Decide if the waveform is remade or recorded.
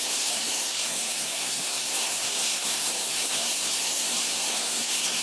remade